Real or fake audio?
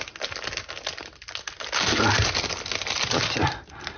real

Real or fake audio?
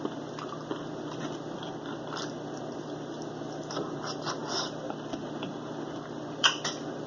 fake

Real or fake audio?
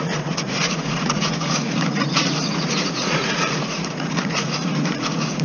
fake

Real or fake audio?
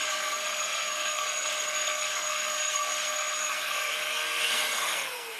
fake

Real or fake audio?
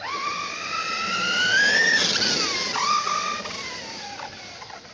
real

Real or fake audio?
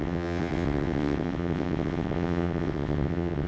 fake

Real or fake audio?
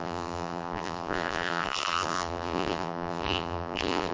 fake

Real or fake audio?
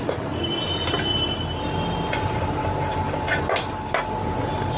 real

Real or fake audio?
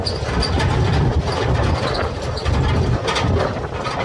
real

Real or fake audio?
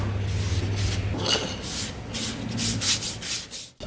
real